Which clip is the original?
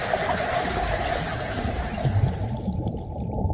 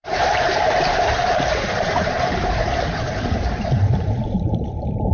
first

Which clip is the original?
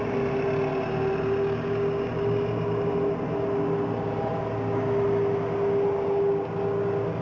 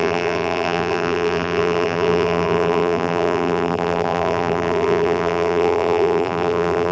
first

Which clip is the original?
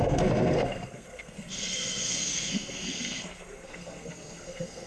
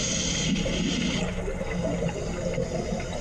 second